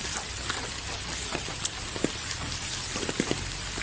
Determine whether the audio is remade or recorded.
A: recorded